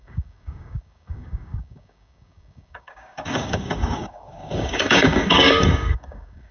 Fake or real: fake